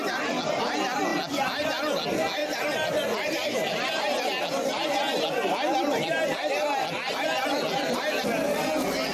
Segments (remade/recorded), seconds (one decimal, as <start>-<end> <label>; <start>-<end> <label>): 0.0-9.1 recorded